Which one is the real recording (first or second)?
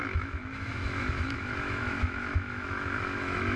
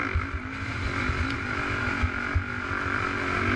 second